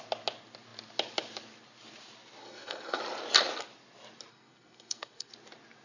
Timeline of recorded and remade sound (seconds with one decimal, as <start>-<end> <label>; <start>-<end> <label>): 0.0-2.4 recorded; 2.4-3.0 remade; 3.0-4.3 recorded; 4.3-5.3 remade; 5.3-5.8 recorded